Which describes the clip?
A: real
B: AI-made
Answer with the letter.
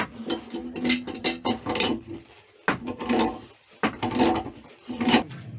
A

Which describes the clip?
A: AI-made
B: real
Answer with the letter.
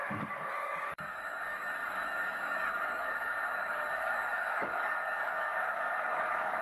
A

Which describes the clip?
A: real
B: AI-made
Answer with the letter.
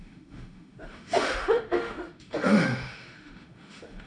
B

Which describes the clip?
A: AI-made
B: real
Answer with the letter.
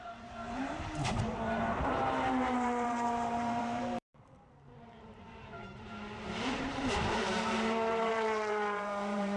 A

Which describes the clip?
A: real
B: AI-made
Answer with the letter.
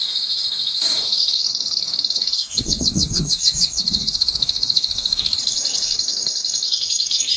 B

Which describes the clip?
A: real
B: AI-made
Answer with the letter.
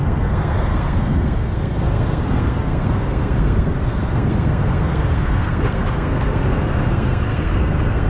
B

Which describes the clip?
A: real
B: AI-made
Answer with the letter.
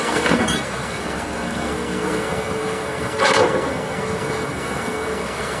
B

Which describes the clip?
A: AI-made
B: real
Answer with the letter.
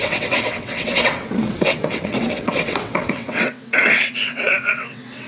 A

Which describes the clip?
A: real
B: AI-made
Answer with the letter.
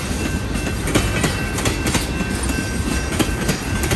A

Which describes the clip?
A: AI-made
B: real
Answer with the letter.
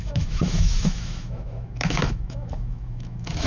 A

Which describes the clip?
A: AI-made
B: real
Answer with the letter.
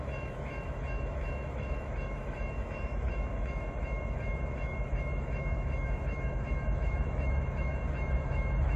A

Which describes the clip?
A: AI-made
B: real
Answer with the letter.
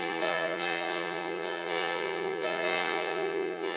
A